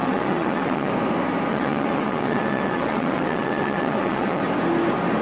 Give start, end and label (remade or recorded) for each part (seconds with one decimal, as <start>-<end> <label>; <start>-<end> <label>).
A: 0.0-0.9 remade; 0.9-1.5 recorded; 1.5-4.4 remade; 4.4-5.2 recorded